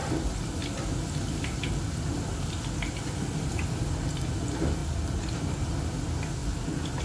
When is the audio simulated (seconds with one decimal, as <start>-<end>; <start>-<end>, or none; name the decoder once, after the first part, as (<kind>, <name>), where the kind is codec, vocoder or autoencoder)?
4.8-5.6 (vocoder, BigVGAN v2); 6.4-7.0

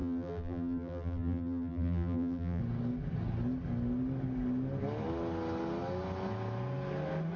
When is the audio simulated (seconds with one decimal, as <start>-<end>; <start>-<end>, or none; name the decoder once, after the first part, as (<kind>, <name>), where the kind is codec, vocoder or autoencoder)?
0.0-2.6 (vocoder, BigVGAN v2)

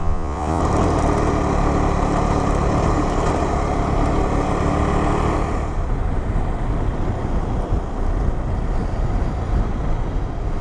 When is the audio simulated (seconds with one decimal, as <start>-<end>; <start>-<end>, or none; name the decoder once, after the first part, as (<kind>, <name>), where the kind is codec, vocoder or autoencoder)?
0.0-0.6 (vocoder, Vocos)

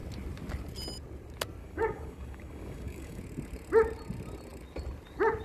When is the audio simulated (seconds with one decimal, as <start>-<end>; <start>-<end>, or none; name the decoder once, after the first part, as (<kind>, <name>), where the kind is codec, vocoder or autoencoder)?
1.6-3.2 (codec, DAC)

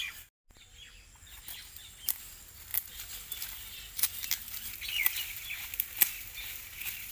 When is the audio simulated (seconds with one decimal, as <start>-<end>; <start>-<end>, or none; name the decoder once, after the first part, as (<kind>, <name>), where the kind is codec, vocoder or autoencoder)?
none

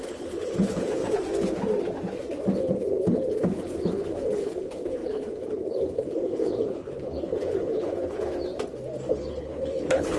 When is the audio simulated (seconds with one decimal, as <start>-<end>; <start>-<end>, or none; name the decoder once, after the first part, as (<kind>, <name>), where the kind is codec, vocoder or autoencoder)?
0.0-1.0 (codec, HILCodec); 2.6-8.3; 9.1-10.2

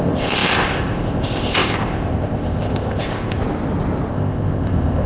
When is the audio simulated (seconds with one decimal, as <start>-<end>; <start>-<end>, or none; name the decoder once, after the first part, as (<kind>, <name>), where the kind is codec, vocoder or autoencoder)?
0.0-3.4 (codec, ZipCodec); 4.1-5.1